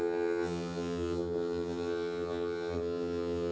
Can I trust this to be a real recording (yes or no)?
no